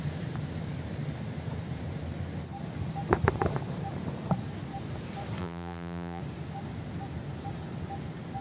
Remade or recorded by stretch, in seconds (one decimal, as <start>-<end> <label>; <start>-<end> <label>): 0.0-5.4 recorded; 5.4-6.2 remade; 6.2-8.4 recorded